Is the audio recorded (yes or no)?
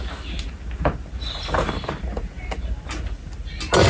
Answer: yes